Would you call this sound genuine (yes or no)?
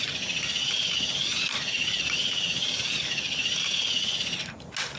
yes